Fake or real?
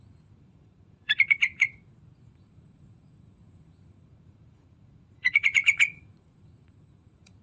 fake